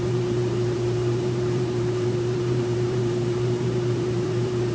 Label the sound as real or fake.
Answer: fake